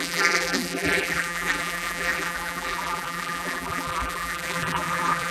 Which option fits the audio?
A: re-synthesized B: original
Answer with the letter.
A